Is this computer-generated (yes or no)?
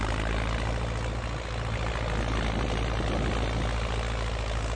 no